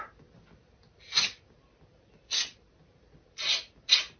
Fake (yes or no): no